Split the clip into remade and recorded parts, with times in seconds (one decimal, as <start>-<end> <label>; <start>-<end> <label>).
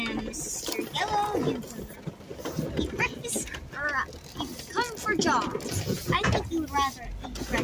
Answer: 0.0-7.6 recorded